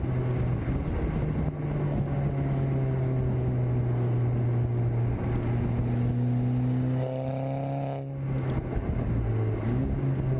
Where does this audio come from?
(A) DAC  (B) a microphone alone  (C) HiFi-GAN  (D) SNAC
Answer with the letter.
B